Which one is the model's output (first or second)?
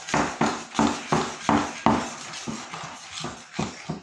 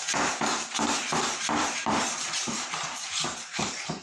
second